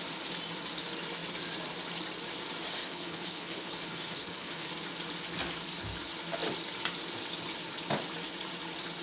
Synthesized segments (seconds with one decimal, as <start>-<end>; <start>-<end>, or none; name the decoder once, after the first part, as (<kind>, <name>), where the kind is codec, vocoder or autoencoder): 2.8-4.7 (codec, HILCodec)